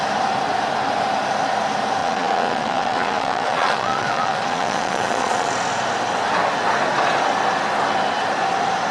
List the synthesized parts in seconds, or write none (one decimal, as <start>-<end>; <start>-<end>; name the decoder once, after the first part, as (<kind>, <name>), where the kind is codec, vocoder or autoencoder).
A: 2.0-5.5 (vocoder, Vocos)